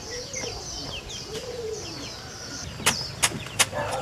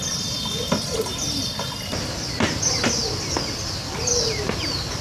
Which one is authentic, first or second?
first